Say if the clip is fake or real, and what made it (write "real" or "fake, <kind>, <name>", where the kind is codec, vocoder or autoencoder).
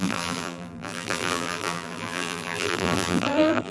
fake, vocoder, BigVGAN v2